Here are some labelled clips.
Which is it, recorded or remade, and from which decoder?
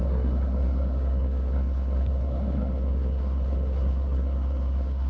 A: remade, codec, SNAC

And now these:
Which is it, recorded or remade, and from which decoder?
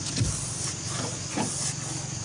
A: recorded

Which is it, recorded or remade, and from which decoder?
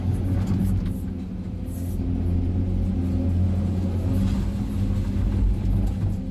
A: recorded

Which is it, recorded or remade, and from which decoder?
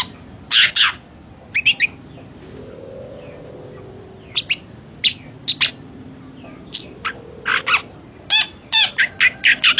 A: recorded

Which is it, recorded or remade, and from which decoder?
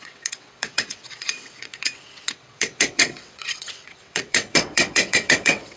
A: remade, vocoder, WaveNeXt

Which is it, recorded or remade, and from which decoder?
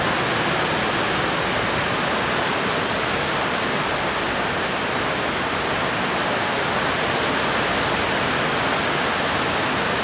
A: recorded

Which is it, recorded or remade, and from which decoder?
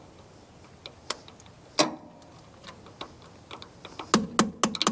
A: recorded